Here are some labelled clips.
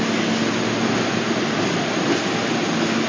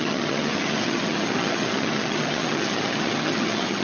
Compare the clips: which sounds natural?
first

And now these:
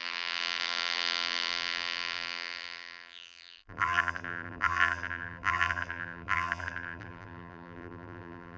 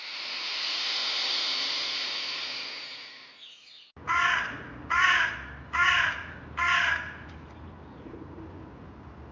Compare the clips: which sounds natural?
second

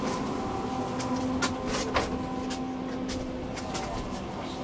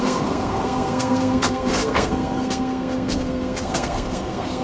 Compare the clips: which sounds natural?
first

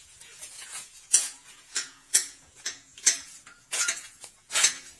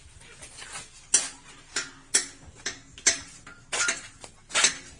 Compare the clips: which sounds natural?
second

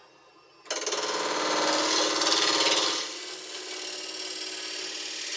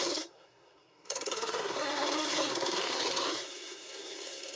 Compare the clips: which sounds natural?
first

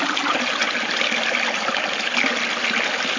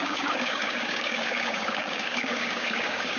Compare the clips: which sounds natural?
first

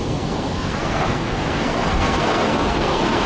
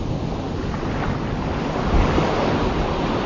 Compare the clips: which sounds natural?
second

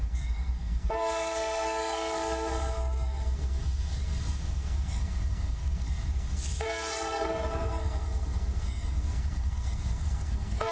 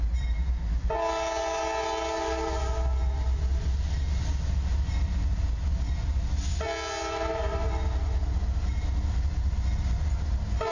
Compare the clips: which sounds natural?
second